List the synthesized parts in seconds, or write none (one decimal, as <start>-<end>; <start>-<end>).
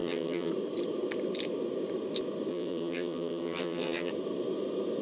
0.0-0.5; 2.5-4.1